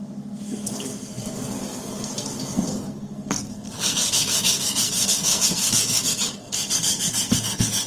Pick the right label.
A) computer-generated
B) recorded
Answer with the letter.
A